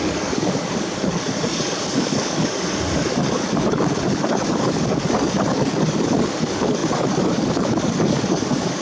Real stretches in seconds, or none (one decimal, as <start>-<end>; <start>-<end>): none